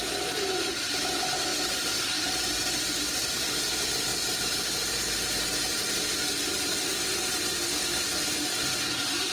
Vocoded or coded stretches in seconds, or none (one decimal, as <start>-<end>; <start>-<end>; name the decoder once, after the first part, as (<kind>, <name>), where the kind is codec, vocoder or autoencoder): 1.5-2.4 (vocoder, BigVGAN v2)